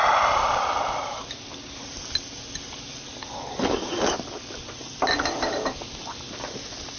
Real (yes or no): yes